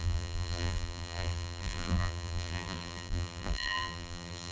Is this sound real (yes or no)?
no